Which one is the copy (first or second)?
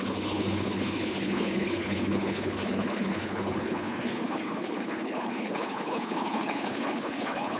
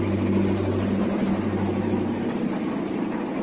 first